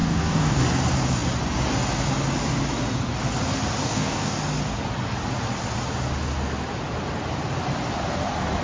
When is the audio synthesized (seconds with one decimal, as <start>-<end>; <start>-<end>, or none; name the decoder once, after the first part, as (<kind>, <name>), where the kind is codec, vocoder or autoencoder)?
0.0-0.6 (codec, DAC); 3.8-4.4